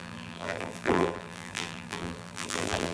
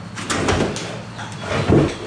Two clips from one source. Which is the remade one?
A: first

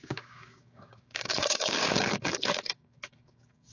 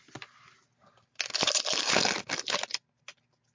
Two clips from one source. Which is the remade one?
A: first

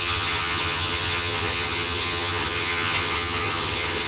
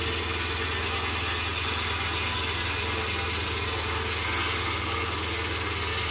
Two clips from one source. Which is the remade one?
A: first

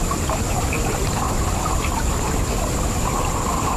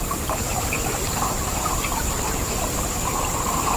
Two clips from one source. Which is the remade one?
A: second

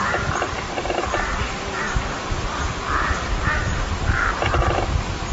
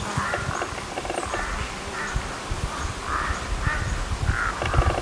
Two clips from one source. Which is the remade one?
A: first